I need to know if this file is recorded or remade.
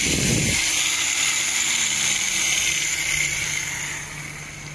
remade